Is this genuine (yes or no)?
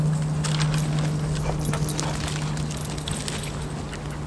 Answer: yes